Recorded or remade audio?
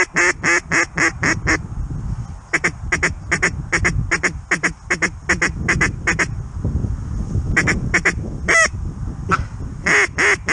recorded